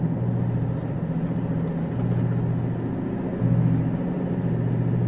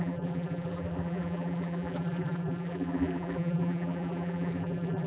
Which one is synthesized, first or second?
second